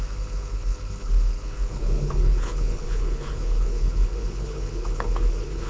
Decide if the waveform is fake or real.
fake